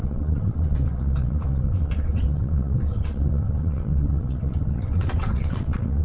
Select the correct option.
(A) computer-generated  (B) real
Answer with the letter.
A